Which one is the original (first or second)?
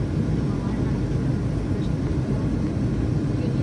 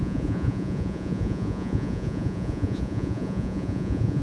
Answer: first